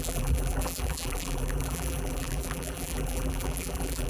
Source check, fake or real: fake